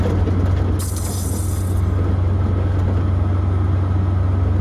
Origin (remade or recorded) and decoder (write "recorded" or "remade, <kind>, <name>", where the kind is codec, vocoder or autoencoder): recorded